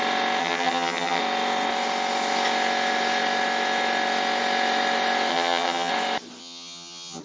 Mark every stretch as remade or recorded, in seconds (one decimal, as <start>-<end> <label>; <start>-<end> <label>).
0.0-0.4 recorded; 0.4-1.2 remade; 1.2-5.3 recorded; 5.3-5.9 remade; 5.9-6.4 recorded; 6.4-7.2 remade